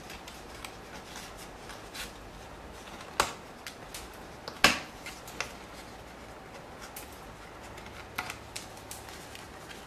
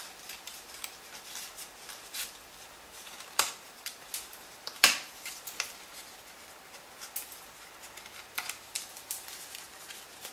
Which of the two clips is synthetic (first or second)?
second